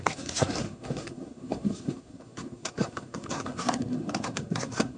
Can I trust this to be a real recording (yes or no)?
no